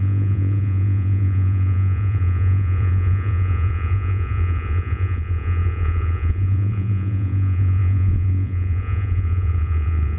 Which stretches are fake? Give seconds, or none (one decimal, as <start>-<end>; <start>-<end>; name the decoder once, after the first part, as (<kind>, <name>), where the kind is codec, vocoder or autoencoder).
0.0-10.2 (vocoder, Vocos)